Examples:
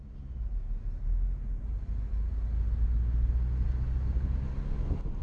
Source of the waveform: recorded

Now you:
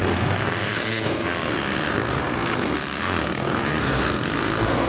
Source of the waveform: remade